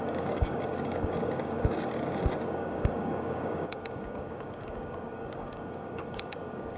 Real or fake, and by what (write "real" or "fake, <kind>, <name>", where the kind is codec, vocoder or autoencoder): fake, codec, DAC